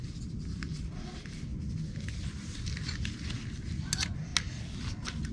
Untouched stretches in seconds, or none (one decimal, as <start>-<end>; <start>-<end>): 0.0-5.3